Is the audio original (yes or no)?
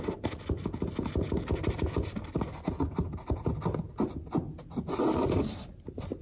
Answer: yes